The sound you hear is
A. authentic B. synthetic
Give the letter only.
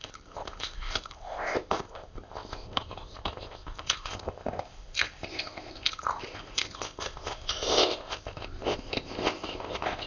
B